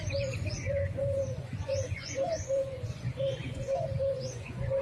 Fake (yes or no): yes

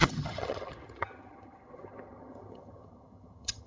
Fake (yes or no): yes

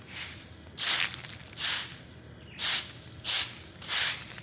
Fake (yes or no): no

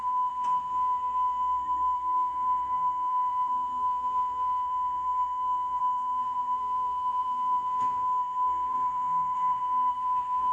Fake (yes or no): yes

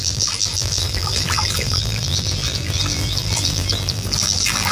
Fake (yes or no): yes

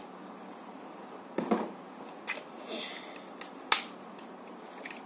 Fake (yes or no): no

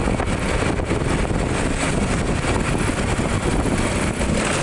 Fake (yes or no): no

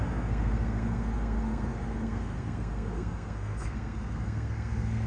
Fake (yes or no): yes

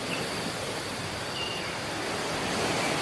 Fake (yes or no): no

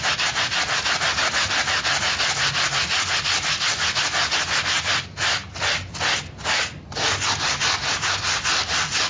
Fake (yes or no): no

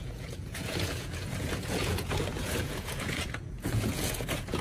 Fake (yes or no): yes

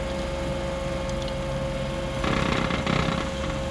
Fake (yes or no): no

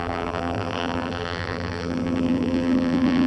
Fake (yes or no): yes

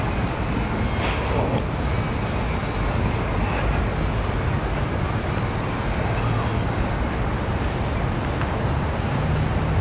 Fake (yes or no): no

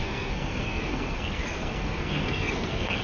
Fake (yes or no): yes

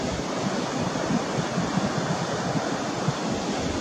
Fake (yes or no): no